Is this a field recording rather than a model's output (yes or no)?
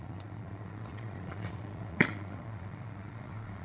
no